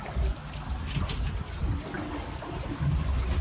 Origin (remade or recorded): recorded